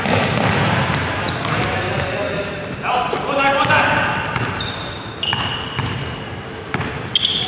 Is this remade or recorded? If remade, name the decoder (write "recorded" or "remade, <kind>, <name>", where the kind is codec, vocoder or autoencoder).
recorded